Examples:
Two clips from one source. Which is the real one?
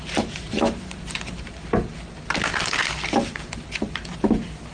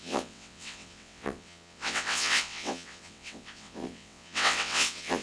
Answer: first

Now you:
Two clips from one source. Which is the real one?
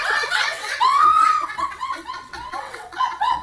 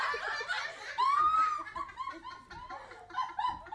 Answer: second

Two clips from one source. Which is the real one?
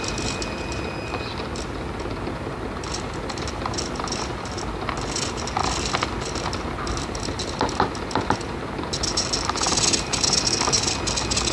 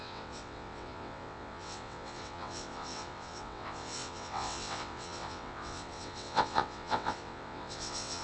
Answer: first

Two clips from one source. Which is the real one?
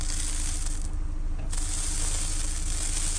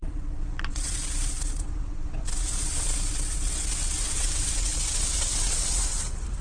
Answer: first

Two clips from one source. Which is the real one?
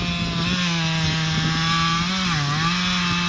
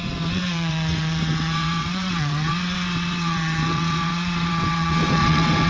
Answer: first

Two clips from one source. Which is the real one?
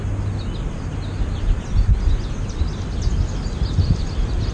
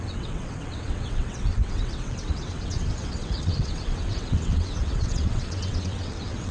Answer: first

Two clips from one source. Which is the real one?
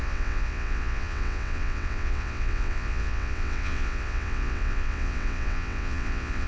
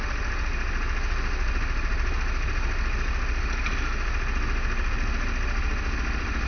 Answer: second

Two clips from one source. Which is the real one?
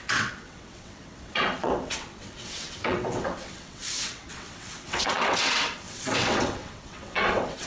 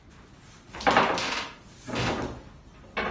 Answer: second